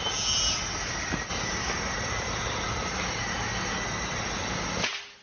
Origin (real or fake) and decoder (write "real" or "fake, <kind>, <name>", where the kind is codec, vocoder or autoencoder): real